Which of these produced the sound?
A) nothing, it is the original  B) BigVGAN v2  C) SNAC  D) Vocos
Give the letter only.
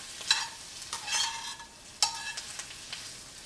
A